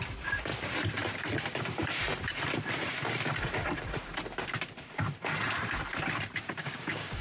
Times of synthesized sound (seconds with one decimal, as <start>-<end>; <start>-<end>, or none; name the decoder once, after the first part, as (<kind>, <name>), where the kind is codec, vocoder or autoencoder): 6.6-7.2 (codec, DAC)